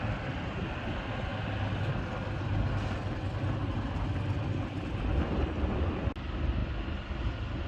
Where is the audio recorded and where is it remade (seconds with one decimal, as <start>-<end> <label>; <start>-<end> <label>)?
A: 0.0-7.7 recorded